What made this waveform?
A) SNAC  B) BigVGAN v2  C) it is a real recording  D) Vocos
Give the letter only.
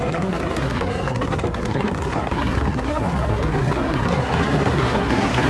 A